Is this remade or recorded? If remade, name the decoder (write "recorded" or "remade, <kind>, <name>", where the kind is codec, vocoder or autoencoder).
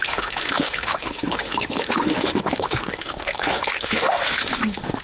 remade, autoencoder, DAC-VAE